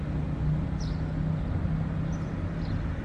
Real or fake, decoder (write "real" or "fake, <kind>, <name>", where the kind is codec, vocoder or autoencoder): real